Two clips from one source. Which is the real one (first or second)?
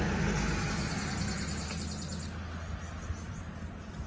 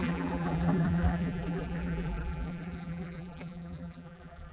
first